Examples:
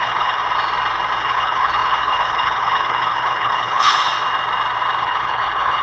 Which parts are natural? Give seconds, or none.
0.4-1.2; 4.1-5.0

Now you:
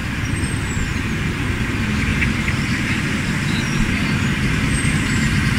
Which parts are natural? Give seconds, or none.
0.0-2.1

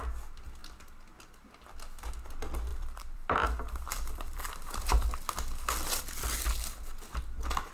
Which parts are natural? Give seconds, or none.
0.0-2.7; 5.1-7.7

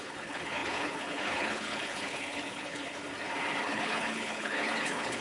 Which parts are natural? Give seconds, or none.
3.0-3.6

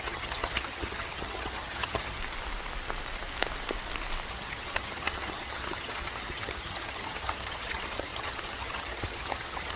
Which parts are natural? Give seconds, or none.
2.2-4.3

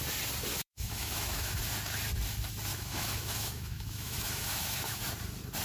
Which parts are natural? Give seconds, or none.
0.0-0.5; 1.6-2.7; 5.0-5.6

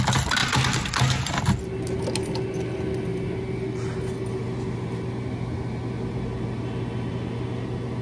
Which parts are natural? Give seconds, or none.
0.0-8.0